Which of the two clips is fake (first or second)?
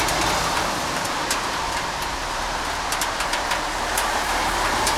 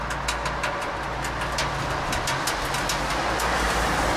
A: first